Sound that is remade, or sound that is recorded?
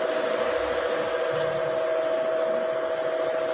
recorded